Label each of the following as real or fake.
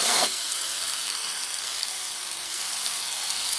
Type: fake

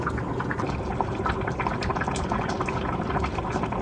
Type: real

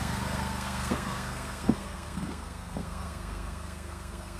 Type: fake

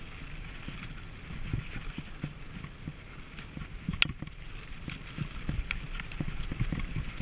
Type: real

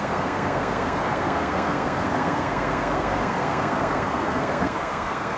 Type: fake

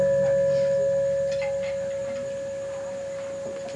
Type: real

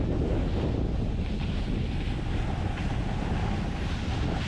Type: real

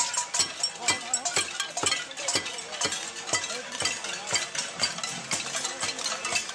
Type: real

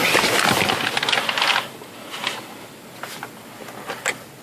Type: real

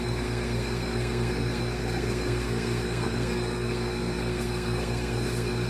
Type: fake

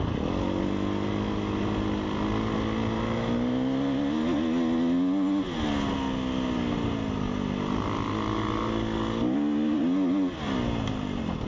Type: real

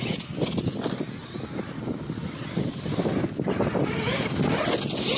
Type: real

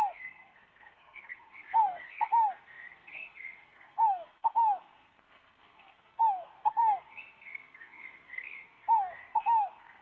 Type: fake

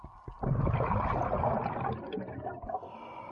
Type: real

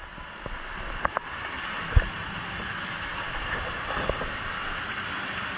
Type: real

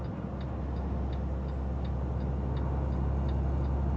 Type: real